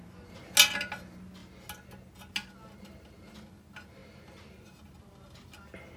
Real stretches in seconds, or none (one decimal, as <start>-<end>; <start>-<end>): 0.0-6.0

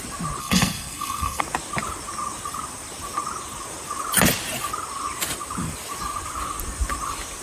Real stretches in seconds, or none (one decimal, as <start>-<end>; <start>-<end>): 0.0-0.4; 1.4-7.4

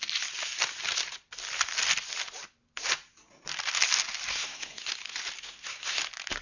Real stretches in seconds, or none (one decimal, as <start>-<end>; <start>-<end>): 0.0-4.3; 4.9-5.4; 6.0-6.4